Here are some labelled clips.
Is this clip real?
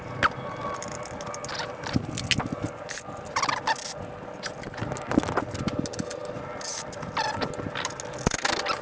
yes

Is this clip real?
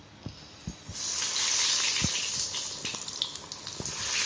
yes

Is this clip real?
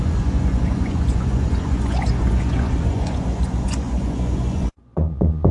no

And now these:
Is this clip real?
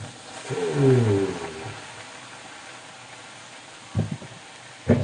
yes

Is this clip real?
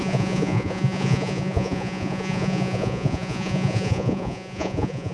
no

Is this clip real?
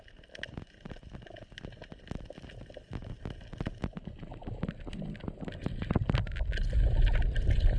yes